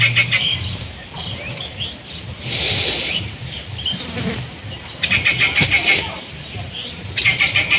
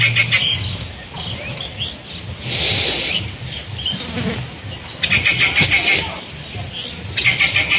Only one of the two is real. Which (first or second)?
second